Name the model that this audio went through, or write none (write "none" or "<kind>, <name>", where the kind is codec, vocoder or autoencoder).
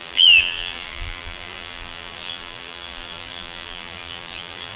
vocoder, BigVGAN v2